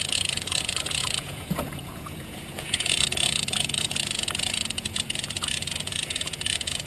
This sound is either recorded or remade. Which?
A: remade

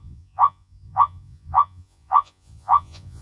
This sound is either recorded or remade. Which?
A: remade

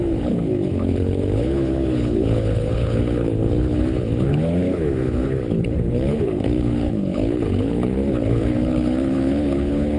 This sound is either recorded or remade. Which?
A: remade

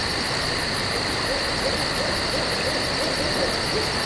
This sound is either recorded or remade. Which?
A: recorded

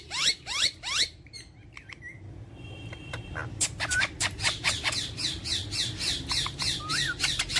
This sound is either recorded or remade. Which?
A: remade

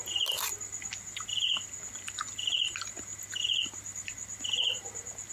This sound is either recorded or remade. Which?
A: recorded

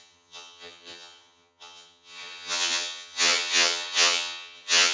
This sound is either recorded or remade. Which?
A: remade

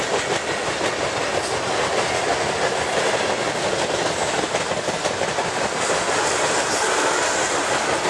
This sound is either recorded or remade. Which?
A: recorded